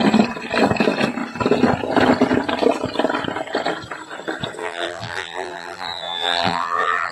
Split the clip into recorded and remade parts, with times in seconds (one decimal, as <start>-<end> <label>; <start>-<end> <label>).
0.0-4.6 recorded; 4.6-7.1 remade